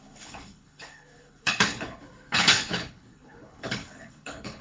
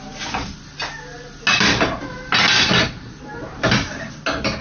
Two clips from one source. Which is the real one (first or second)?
second